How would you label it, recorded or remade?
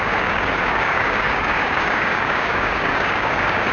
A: remade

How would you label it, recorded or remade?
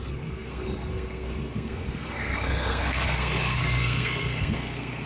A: remade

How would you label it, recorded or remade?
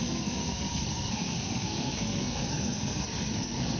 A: remade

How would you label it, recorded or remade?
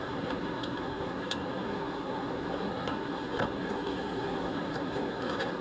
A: remade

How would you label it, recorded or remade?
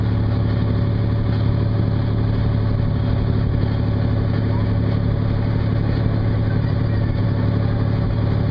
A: recorded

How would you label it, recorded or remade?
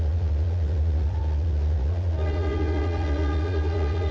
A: remade